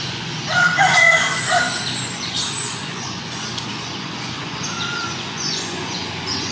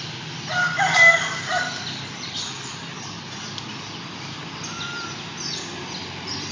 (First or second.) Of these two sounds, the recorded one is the second